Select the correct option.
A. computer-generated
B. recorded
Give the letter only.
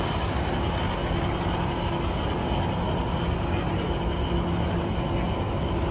B